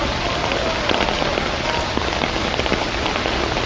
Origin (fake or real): real